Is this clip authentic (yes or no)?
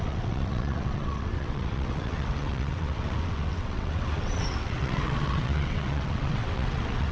no